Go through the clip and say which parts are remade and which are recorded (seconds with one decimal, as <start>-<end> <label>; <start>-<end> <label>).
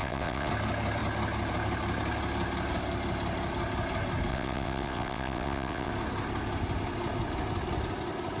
0.0-0.5 remade; 0.5-4.3 recorded; 4.3-5.9 remade; 5.9-8.4 recorded